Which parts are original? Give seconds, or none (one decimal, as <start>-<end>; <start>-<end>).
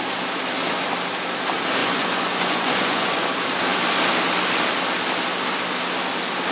0.0-1.8; 3.3-6.5